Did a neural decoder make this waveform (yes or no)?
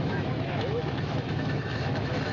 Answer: yes